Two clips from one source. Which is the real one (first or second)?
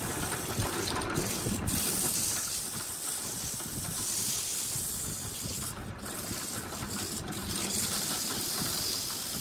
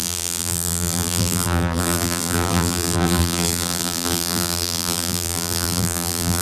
first